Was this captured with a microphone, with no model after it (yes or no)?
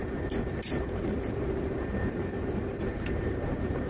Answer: no